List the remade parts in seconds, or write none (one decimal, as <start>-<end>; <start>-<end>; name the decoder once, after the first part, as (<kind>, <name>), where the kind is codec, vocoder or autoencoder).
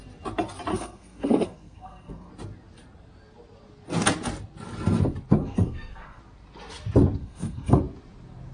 0.7-2.3 (codec, SNAC); 5.4-6.2; 7.2-7.8